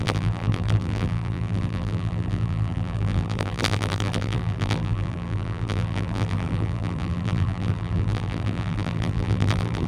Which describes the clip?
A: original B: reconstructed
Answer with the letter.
B